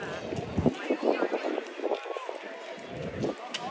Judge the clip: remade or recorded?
recorded